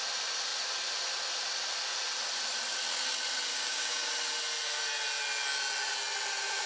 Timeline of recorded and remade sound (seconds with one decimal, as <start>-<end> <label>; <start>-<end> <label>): 0.0-3.5 recorded; 3.5-4.1 remade; 4.1-6.7 recorded